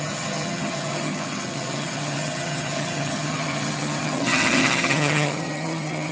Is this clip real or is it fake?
fake